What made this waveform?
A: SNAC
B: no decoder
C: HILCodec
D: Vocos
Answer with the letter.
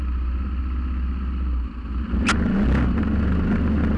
B